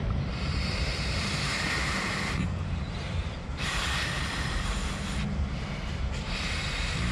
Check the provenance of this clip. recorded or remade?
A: remade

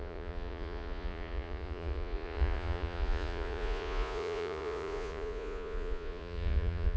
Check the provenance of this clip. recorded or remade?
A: remade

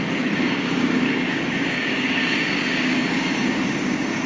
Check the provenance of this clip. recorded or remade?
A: remade